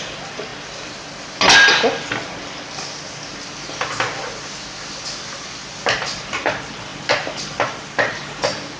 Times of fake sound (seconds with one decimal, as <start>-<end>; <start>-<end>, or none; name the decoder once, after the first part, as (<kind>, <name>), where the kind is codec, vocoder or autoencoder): none